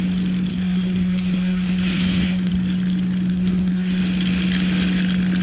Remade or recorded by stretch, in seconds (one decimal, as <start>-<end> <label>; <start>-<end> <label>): 0.0-0.5 recorded; 0.5-2.5 remade; 2.5-3.3 recorded; 3.3-4.0 remade; 4.0-5.4 recorded